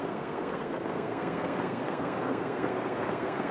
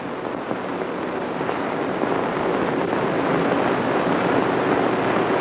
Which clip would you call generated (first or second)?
first